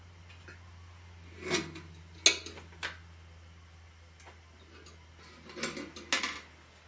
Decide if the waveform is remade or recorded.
recorded